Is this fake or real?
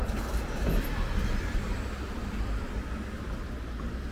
real